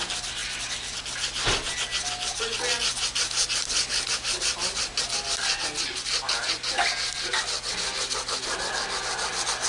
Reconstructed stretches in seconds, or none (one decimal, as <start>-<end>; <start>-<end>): none

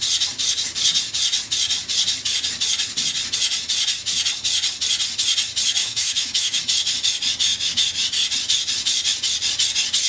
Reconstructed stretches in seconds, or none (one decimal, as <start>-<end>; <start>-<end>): 5.8-6.6

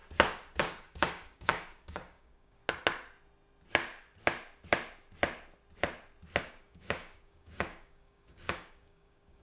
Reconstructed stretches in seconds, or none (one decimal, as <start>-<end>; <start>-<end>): 0.6-2.6; 6.4-9.4

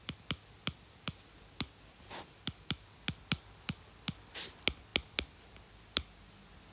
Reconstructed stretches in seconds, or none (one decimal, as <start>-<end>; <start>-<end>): none

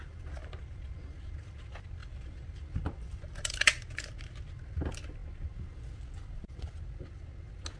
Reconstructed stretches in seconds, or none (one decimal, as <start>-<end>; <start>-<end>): 0.4-1.0; 2.0-4.0

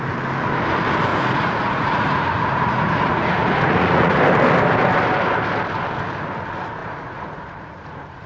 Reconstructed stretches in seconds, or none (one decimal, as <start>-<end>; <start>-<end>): 1.1-4.2; 6.8-8.3

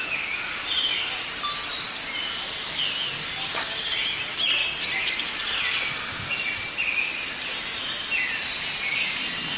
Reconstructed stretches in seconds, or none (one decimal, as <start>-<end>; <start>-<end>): none